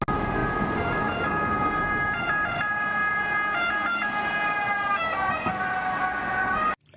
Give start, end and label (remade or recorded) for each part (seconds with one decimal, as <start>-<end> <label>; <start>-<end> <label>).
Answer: 0.0-7.0 recorded